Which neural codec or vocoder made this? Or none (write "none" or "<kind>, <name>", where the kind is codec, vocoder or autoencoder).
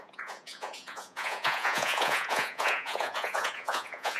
vocoder, Vocos